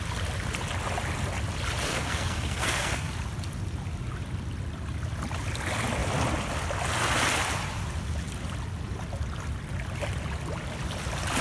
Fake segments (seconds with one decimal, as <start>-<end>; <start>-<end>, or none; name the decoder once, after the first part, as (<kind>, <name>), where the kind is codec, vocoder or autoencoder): 1.9-3.1 (codec, SNAC)